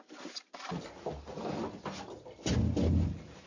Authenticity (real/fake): real